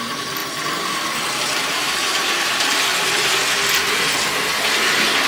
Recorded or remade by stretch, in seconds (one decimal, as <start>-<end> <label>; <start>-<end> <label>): 0.0-2.9 remade; 2.9-5.3 recorded